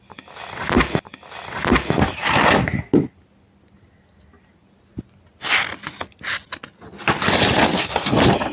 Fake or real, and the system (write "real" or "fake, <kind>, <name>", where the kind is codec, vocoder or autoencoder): real